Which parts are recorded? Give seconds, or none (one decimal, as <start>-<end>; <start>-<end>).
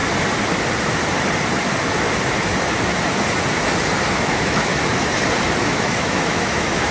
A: 0.0-4.1; 4.7-5.6